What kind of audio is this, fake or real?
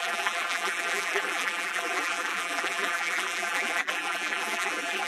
fake